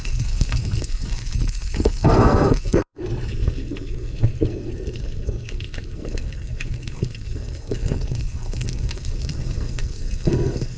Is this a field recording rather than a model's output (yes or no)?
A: no